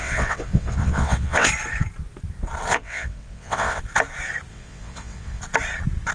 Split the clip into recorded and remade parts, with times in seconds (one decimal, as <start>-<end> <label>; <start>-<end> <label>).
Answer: 0.0-1.5 remade; 1.5-2.7 recorded; 2.7-3.8 remade; 3.8-4.5 recorded; 4.5-5.4 remade; 5.4-6.1 recorded

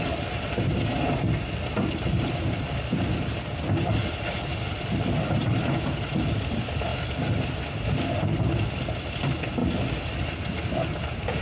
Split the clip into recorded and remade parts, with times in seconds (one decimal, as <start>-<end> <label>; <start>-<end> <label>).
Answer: 0.0-11.4 recorded

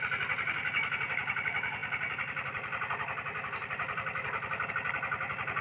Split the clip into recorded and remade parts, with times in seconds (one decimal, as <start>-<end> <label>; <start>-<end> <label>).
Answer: 0.0-1.8 recorded; 1.8-4.7 remade; 4.7-5.6 recorded